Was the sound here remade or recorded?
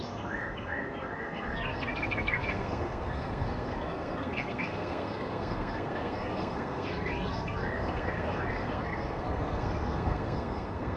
remade